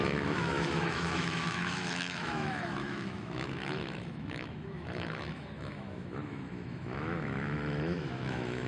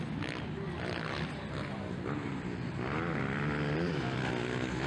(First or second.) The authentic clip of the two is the second